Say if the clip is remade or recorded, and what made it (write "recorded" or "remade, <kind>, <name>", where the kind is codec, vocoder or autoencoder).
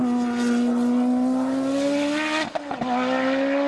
recorded